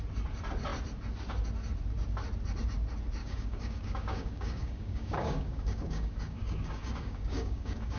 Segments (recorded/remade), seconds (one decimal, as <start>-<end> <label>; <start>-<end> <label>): 0.0-3.2 recorded; 3.2-8.0 remade